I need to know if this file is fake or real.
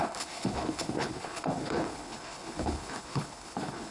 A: fake